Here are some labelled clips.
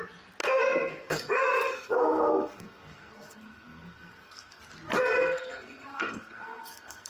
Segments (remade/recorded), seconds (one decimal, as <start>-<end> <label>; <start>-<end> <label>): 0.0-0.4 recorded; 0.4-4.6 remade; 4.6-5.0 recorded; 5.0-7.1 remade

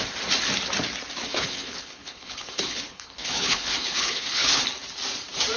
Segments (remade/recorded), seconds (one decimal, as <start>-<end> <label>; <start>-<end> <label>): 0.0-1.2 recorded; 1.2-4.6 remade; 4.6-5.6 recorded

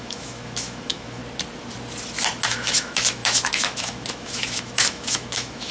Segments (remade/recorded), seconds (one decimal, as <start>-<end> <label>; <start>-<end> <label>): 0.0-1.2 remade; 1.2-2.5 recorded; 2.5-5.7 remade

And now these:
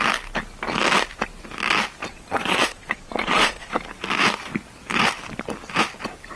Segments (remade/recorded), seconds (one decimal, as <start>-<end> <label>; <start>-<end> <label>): 0.0-2.1 recorded; 2.1-3.8 remade; 3.8-6.4 recorded

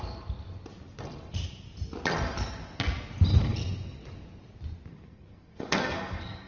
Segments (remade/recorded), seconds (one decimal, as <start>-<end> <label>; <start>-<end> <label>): 0.0-4.9 recorded; 4.9-6.5 remade

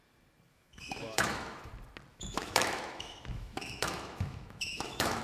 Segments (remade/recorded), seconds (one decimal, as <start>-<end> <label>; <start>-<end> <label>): 0.0-0.5 recorded; 0.5-1.7 remade; 1.7-2.1 recorded; 2.1-5.2 remade

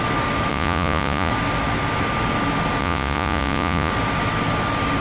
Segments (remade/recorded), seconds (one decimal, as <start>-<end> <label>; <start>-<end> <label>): 0.0-0.5 recorded; 0.5-1.3 remade; 1.3-2.8 recorded; 2.8-3.9 remade; 3.9-5.0 recorded

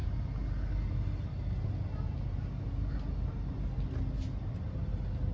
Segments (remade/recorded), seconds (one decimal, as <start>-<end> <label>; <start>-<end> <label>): 0.0-5.3 recorded